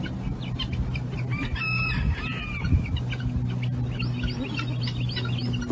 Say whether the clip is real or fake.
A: real